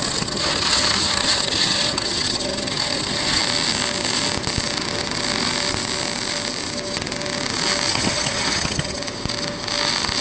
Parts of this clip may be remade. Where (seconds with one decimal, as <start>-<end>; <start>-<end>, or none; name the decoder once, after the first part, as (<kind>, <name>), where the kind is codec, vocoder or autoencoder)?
0.0-3.4 (vocoder, HiFi-GAN); 7.9-9.0